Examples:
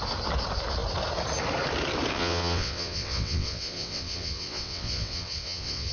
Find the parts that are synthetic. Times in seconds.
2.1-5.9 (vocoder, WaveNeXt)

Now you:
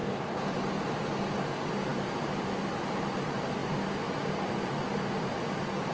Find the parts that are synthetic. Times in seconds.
none

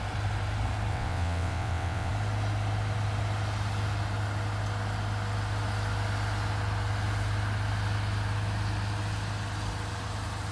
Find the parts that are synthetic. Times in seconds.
0.9-2.1 (vocoder, WaveNeXt)

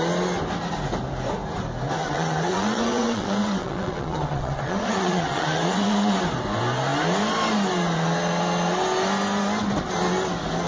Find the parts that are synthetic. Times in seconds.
2.0-6.2 (vocoder, WaveNeXt)